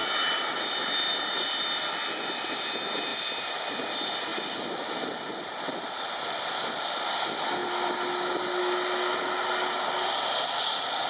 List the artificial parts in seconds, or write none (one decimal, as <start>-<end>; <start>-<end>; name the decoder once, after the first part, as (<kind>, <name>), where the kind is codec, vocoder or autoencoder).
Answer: 0.0-2.7 (vocoder, BigVGAN v2); 3.1-3.7